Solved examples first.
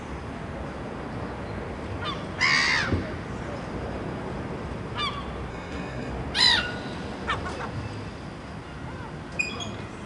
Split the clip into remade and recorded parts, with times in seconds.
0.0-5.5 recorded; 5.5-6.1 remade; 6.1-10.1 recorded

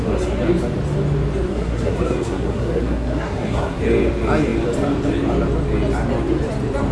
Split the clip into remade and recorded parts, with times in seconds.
0.0-1.5 recorded; 1.5-3.8 remade; 3.8-6.9 recorded

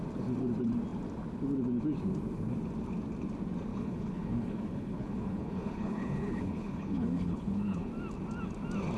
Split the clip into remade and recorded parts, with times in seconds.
0.0-3.7 recorded; 3.7-7.9 remade; 7.9-9.0 recorded

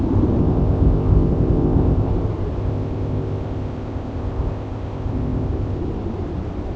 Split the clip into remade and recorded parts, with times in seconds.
0.0-0.4 recorded; 0.4-2.1 remade; 2.1-2.6 recorded; 2.6-5.8 remade; 5.8-6.8 recorded

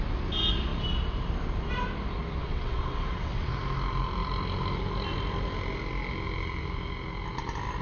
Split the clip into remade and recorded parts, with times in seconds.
0.0-2.4 recorded; 2.4-3.5 remade; 3.5-7.8 recorded

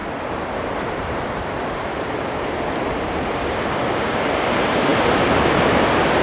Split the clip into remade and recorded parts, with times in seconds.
0.0-3.8 recorded; 3.8-4.3 remade; 4.3-6.2 recorded

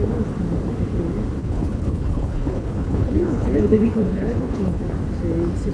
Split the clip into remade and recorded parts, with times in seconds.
0.0-1.4 recorded; 1.4-4.8 remade; 4.8-5.7 recorded